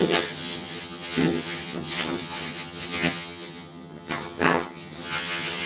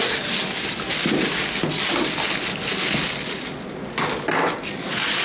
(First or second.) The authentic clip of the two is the second